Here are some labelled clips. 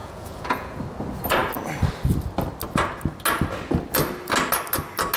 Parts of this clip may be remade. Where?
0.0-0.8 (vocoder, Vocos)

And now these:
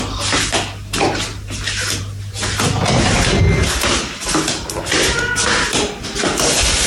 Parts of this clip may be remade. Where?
none

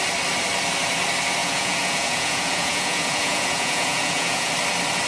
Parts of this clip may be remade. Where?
1.4-4.5 (vocoder, Vocos)